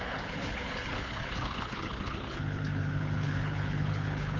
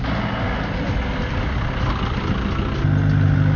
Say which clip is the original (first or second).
second